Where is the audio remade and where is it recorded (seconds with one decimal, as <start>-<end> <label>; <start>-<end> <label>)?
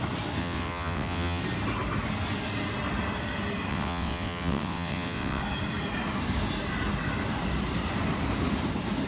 0.0-0.4 recorded; 0.4-1.4 remade; 1.4-3.7 recorded; 3.7-5.4 remade; 5.4-9.1 recorded